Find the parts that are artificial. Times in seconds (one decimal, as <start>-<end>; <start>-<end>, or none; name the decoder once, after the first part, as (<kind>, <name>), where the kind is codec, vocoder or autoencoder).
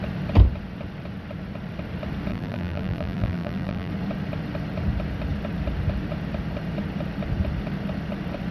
2.3-3.9 (vocoder, BigVGAN v2)